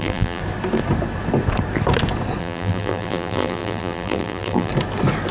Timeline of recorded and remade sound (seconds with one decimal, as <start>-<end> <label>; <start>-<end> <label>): 0.0-0.4 remade; 0.4-2.4 recorded; 2.4-4.7 remade; 4.7-5.3 recorded